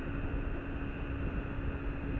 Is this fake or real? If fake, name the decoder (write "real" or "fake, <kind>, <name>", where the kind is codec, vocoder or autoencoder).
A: real